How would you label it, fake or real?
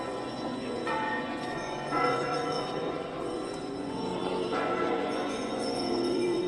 fake